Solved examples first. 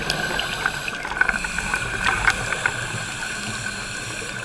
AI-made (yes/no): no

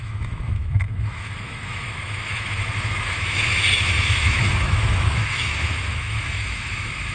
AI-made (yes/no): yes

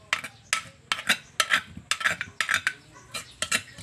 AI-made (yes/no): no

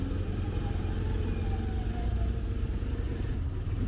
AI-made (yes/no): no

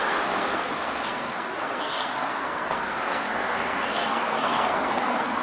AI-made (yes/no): yes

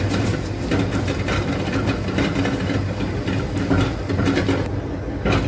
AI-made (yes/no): no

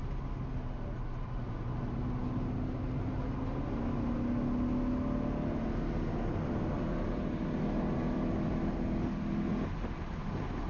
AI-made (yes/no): no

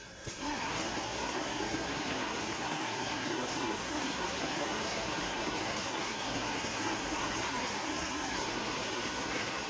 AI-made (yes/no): yes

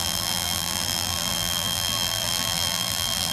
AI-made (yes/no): yes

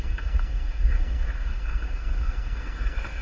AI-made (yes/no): yes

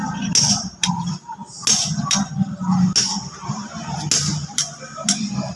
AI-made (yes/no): no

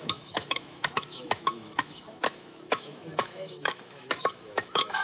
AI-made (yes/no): yes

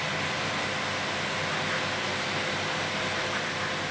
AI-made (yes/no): no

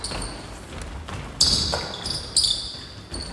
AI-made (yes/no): no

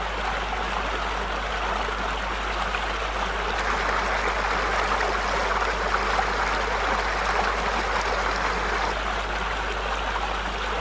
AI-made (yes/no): no